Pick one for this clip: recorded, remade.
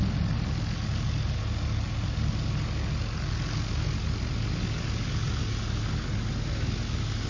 recorded